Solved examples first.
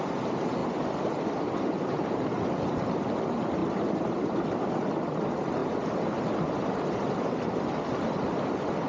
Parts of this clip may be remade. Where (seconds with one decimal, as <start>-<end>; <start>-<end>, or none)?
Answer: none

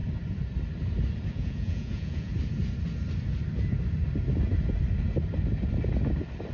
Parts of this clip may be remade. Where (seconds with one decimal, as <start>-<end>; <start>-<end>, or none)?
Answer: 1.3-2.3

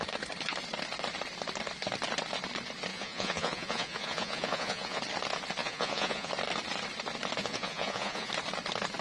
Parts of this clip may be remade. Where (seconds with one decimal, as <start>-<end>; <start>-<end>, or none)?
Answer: 2.9-5.0; 5.6-6.3; 7.4-8.3

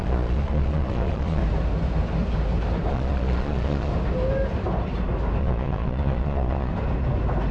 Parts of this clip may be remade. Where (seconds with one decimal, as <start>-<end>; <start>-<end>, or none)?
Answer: 0.0-1.4; 2.9-3.9; 5.4-6.7